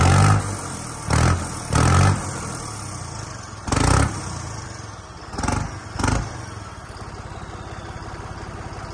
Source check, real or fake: real